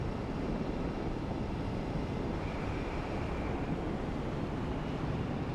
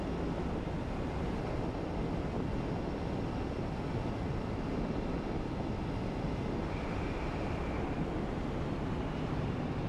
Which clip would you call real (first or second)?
second